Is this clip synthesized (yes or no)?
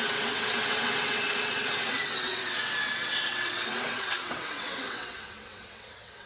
yes